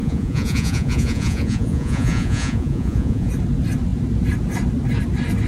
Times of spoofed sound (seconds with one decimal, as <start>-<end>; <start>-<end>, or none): 0.0-3.3